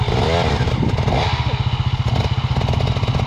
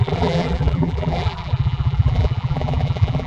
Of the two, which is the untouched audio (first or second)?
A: first